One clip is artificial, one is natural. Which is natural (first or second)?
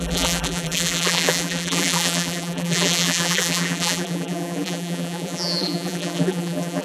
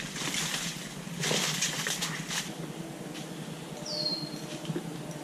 second